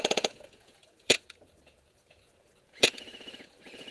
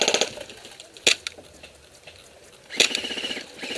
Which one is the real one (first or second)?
second